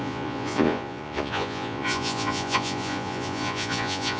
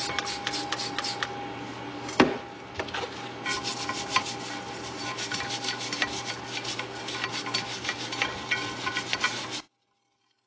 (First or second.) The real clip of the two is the second